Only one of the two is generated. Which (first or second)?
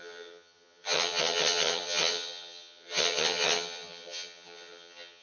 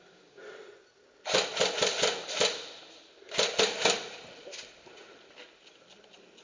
first